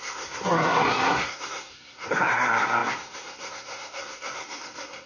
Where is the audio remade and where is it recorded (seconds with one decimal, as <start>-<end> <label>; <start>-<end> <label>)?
0.0-5.1 remade